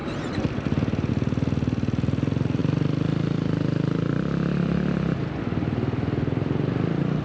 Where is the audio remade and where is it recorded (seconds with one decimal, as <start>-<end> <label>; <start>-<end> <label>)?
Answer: 0.0-7.2 recorded